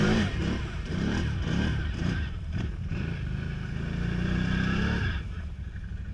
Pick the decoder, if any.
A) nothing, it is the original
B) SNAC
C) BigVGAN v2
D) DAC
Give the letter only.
C